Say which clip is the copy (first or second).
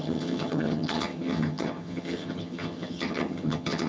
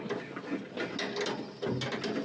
first